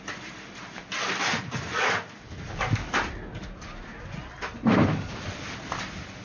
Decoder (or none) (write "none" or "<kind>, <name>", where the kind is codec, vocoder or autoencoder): none